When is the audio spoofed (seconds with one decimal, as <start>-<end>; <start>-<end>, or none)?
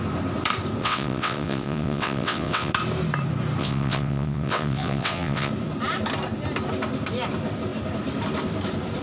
0.8-2.7; 3.6-5.5